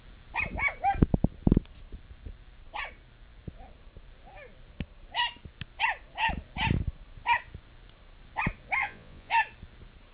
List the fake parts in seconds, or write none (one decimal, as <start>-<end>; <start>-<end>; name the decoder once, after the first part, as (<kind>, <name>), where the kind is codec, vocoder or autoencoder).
8.8-9.3 (vocoder, Vocos)